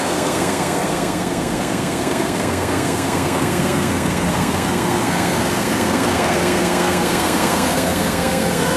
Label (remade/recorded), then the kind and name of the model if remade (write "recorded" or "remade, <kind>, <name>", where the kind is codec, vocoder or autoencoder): remade, codec, SNAC